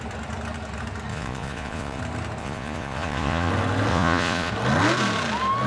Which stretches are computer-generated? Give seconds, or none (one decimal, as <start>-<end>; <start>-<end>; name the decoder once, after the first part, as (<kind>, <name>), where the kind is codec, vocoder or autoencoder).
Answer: 1.1-2.0 (vocoder, Vocos); 2.4-3.5; 3.9-4.5